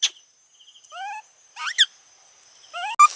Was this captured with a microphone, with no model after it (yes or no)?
yes